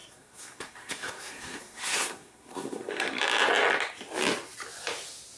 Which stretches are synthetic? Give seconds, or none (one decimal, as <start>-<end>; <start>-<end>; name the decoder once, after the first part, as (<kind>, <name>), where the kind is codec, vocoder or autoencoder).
0.0-3.2 (codec, SNAC)